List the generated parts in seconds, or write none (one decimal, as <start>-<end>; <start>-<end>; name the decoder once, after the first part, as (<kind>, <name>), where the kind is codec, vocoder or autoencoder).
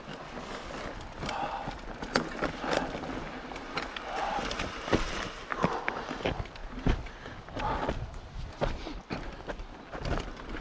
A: none